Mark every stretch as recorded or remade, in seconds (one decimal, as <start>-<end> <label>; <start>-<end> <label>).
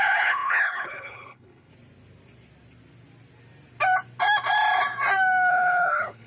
0.0-1.7 remade; 1.7-5.5 recorded; 5.5-6.3 remade